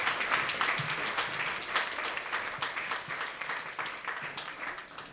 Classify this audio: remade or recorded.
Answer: recorded